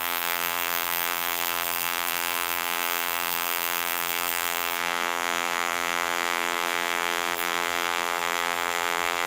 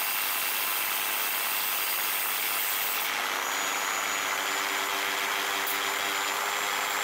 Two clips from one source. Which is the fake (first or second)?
first